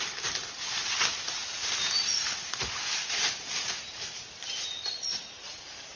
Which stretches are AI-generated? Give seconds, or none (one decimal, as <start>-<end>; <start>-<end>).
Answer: none